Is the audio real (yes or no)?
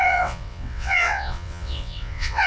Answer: no